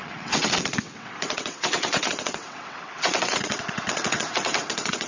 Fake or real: fake